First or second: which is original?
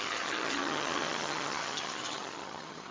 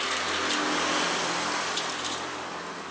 second